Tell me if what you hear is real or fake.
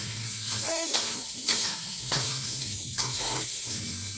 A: fake